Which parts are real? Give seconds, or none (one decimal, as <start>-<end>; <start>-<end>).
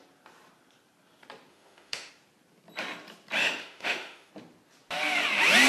0.0-1.5; 2.1-3.4; 4.3-5.7